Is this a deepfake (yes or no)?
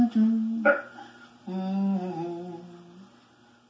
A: no